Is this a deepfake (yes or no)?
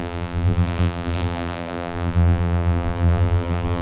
yes